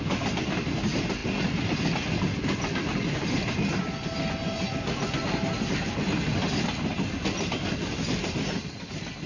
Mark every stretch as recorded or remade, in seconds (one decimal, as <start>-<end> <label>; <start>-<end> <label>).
0.0-9.3 recorded